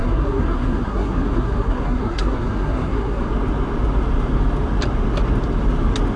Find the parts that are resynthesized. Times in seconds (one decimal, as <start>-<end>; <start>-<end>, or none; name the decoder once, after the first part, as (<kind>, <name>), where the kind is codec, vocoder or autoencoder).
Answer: 0.0-3.3 (codec, SNAC)